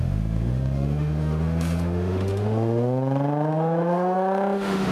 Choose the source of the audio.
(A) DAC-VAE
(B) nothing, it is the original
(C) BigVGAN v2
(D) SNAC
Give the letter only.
A